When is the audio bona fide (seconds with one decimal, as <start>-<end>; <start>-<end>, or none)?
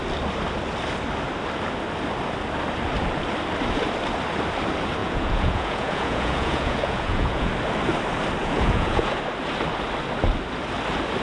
0.0-5.0; 7.5-8.4; 9.2-11.2